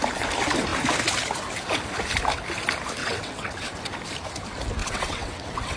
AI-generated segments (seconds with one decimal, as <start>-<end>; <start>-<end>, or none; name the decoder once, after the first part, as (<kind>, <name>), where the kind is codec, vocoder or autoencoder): 3.0-3.7 (vocoder, WaveNeXt); 4.8-5.8